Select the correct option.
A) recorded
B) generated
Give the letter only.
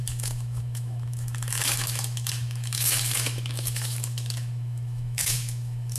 B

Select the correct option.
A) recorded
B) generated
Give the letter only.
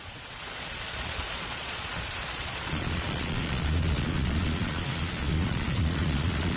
B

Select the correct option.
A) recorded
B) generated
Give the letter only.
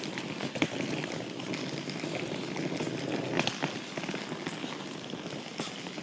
A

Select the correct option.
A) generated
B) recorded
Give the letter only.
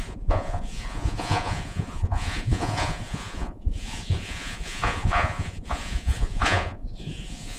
A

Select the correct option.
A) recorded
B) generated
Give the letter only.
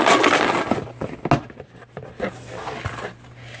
A